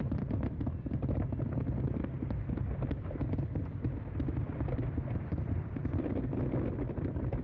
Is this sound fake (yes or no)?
no